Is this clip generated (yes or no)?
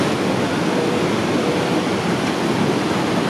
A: no